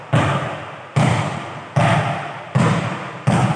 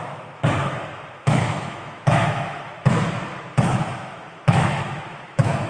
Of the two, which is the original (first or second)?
first